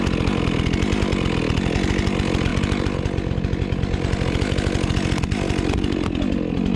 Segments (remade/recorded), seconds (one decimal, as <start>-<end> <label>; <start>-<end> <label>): 0.0-6.8 recorded

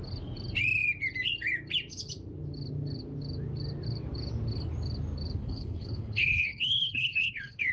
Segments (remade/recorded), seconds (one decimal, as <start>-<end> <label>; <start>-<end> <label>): 0.0-5.4 recorded; 5.4-7.7 remade

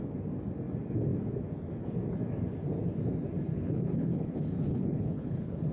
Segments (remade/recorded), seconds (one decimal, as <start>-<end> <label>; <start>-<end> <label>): 0.0-3.5 recorded; 3.5-5.7 remade

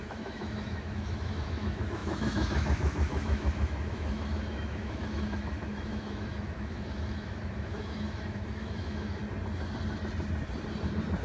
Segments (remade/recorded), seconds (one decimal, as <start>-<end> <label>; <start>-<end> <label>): 0.0-9.2 remade; 9.2-11.2 recorded

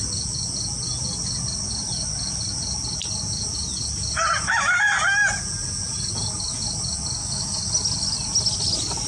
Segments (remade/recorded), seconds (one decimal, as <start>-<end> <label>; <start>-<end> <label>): 0.0-7.2 recorded; 7.2-7.7 remade; 7.7-9.1 recorded

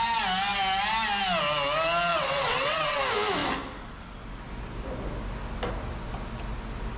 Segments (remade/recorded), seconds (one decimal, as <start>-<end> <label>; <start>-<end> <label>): 0.0-2.1 recorded; 2.1-3.0 remade; 3.0-7.0 recorded

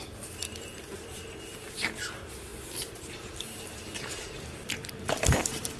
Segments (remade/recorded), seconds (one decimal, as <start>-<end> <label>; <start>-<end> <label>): 0.0-5.8 remade

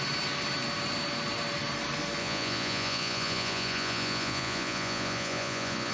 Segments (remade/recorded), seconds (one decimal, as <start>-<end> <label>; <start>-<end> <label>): 0.0-2.2 recorded; 2.2-5.9 remade